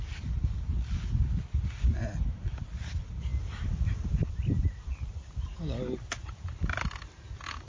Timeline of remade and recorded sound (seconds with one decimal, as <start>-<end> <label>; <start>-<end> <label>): 0.0-3.3 recorded; 3.3-5.8 remade; 5.8-7.7 recorded